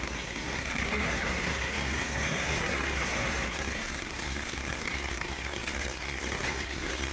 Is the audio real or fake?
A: fake